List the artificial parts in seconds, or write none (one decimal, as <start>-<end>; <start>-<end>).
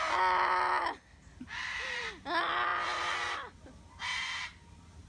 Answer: none